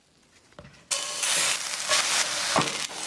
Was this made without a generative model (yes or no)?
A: yes